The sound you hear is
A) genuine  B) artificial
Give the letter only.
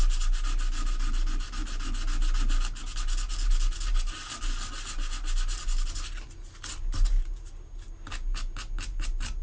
A